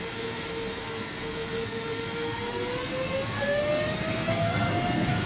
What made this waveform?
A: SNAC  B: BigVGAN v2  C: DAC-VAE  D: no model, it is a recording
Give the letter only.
A